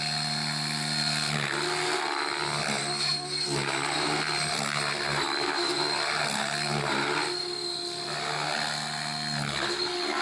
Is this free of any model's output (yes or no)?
yes